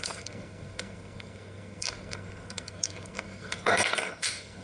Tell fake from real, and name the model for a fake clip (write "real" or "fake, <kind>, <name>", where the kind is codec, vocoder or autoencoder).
fake, codec, SNAC